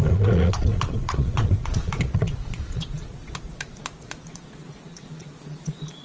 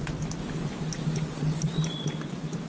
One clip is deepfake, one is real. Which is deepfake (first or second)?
first